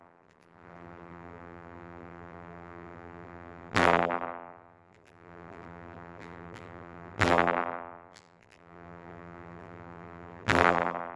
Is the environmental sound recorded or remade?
remade